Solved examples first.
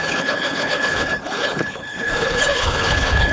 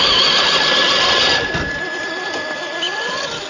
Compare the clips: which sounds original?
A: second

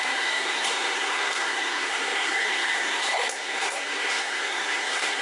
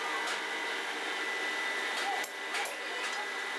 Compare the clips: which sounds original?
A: second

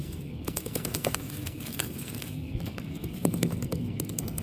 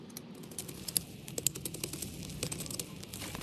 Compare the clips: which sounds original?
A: second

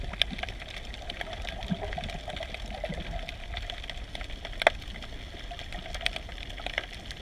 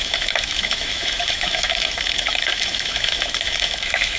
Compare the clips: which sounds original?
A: first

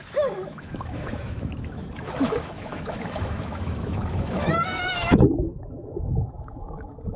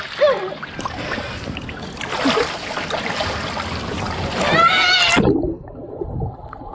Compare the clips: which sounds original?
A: second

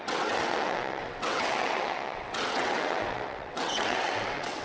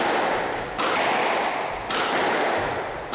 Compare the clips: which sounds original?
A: second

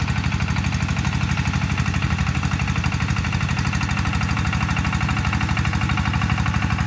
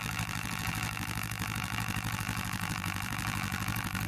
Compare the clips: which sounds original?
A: first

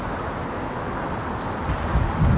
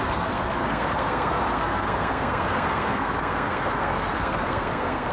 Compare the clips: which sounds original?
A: first